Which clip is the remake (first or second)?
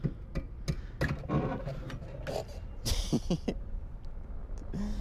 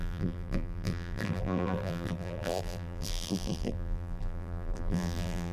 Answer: second